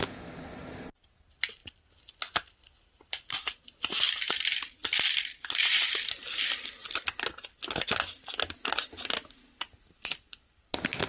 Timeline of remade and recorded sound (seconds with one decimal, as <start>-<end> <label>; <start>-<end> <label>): 0.0-11.1 recorded